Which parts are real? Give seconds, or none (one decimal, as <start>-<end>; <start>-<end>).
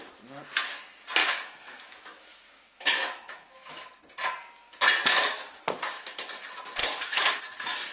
0.0-1.2; 4.0-6.8; 7.4-7.9